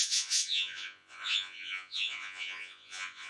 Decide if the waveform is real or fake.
fake